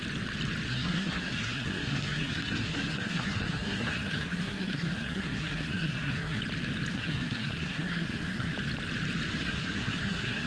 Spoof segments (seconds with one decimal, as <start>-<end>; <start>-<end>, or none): 0.7-6.4; 6.9-8.5; 9.3-10.5